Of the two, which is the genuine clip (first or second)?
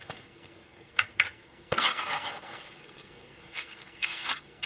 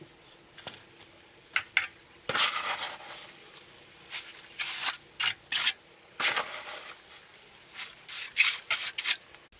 second